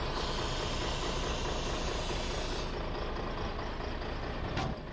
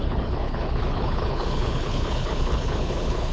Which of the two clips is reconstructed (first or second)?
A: second